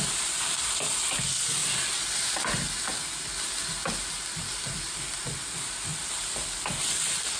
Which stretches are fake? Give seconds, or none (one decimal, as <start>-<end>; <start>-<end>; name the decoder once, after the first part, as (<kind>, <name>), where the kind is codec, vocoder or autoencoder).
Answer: 0.0-1.6 (vocoder, BigVGAN v2); 4.5-7.4